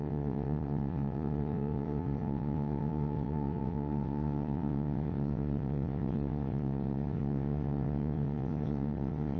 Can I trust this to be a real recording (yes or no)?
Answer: no